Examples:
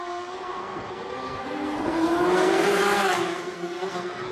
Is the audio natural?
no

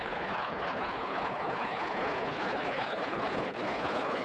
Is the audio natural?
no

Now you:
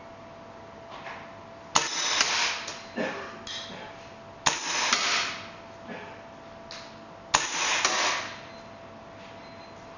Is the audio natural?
yes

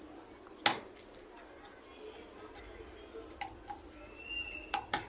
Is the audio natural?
yes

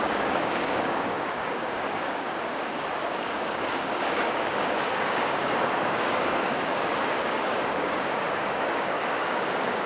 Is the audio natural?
no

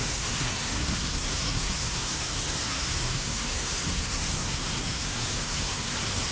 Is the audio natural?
no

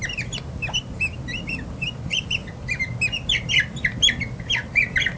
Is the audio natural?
yes